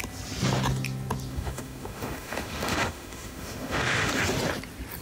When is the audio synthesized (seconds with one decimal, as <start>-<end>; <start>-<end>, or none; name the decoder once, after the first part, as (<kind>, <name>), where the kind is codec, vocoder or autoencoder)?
1.3-4.1 (autoencoder, DAC-VAE)